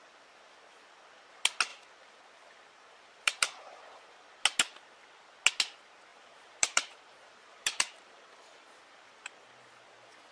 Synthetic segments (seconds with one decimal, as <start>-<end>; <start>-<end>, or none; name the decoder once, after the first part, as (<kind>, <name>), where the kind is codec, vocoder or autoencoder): 1.7-4.0 (vocoder, BigVGAN v2); 6.1-9.2